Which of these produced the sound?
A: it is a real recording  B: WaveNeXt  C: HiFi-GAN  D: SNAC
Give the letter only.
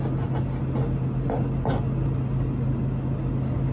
A